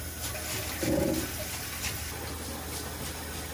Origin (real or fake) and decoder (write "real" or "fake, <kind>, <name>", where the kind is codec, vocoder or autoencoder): real